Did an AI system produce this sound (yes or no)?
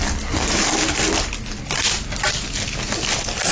no